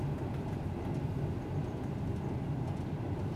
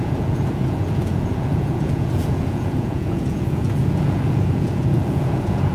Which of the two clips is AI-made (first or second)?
second